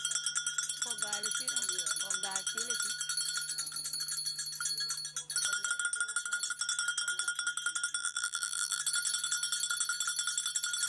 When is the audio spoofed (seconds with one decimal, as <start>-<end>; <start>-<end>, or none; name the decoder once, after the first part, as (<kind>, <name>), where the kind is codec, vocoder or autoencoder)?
8.0-8.8 (vocoder, BigVGAN v2)